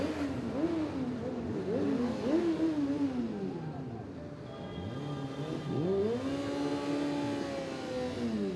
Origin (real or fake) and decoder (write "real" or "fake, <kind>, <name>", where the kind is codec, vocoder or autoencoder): real